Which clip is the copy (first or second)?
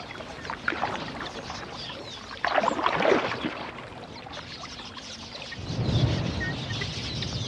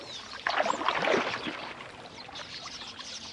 first